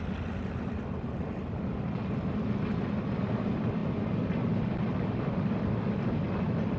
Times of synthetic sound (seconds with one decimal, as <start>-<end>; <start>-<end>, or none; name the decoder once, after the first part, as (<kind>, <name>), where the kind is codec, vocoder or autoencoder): none